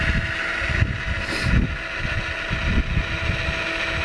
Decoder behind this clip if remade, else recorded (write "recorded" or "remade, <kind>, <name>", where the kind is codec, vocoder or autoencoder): recorded